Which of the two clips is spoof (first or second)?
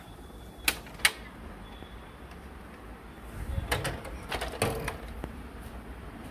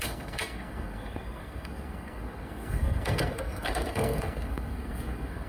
second